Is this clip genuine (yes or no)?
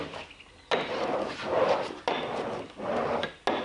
yes